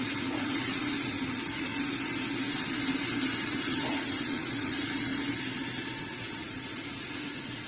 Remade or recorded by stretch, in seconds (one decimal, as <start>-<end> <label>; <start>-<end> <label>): 0.0-1.7 remade; 1.7-3.4 recorded; 3.4-5.1 remade; 5.1-6.0 recorded; 6.0-7.7 remade